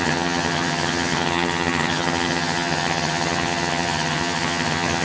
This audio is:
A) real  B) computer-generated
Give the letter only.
B